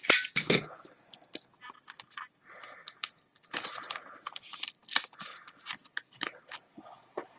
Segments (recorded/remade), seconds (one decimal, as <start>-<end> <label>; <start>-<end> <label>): 0.0-7.4 recorded